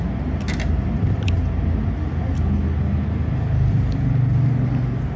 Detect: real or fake real